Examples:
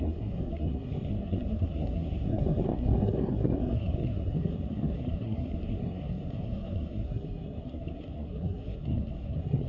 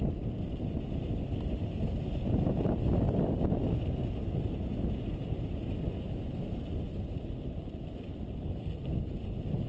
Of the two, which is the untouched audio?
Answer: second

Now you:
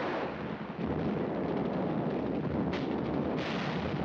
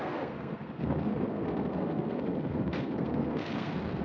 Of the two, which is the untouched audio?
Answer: first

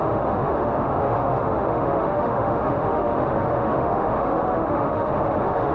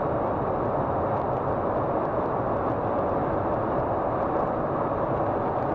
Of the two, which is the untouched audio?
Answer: second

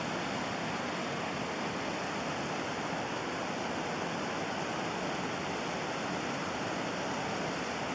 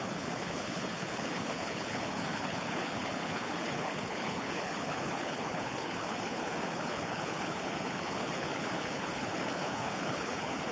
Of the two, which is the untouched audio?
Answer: first